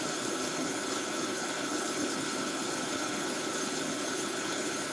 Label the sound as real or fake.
fake